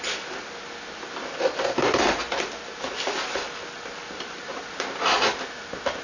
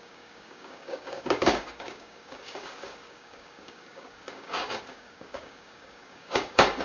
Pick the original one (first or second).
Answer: first